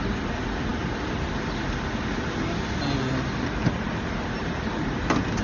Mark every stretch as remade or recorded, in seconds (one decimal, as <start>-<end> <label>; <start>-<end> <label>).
0.0-5.4 recorded